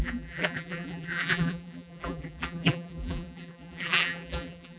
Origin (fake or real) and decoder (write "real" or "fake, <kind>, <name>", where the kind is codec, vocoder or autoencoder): fake, vocoder, BigVGAN v2